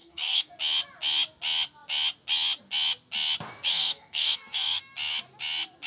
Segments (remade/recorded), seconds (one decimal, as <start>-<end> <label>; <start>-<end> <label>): 0.0-0.5 remade; 0.5-3.7 recorded; 3.7-4.8 remade; 4.8-5.9 recorded